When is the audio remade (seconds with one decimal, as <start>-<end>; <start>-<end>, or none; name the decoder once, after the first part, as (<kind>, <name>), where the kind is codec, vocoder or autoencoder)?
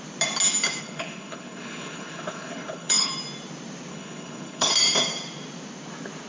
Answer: 0.8-3.1 (codec, HILCodec); 3.9-4.7